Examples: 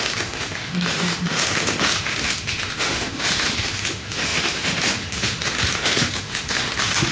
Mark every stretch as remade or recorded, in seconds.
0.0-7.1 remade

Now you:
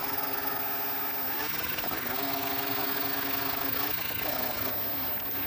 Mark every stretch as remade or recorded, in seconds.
0.0-0.6 remade; 0.6-1.4 recorded; 1.4-4.7 remade; 4.7-5.5 recorded

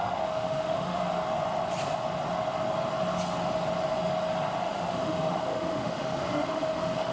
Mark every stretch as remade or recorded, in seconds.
0.0-1.0 remade; 1.0-4.6 recorded; 4.6-7.1 remade

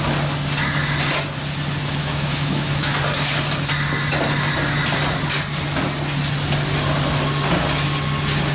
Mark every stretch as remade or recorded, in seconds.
0.0-2.0 recorded; 2.0-2.9 remade; 2.9-8.5 recorded

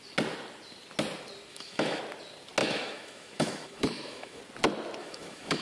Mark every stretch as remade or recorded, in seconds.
0.0-1.5 recorded; 1.5-2.0 remade; 2.0-2.6 recorded; 2.6-4.4 remade; 4.4-5.0 recorded; 5.0-5.6 remade

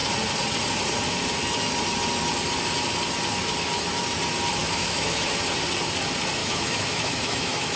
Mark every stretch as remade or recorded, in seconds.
0.0-4.6 recorded; 4.6-5.3 remade; 5.3-6.4 recorded; 6.4-7.8 remade

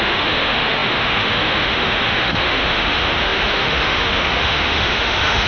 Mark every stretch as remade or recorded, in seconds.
0.0-5.5 remade

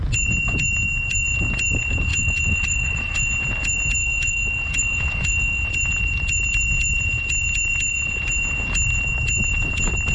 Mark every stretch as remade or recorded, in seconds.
0.0-2.1 recorded; 2.1-3.3 remade; 3.3-4.0 recorded; 4.0-5.7 remade; 5.7-10.1 recorded